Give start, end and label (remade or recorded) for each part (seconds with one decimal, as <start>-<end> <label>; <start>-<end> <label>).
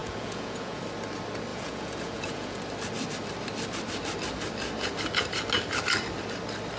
0.0-0.8 remade; 0.8-1.5 recorded; 1.5-2.6 remade; 2.6-6.8 recorded